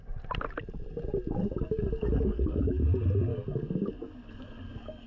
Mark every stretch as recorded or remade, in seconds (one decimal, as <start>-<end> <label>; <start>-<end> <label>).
0.0-1.4 recorded; 1.4-2.8 remade; 2.8-3.3 recorded; 3.3-5.1 remade